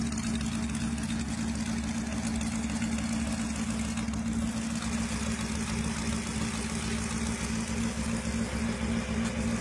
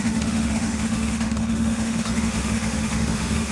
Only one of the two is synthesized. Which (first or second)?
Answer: second